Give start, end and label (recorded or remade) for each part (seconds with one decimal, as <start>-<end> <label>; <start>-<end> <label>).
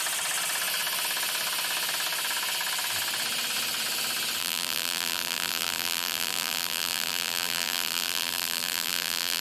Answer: 0.0-4.4 recorded; 4.4-9.4 remade